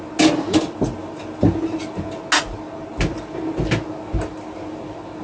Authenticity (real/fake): real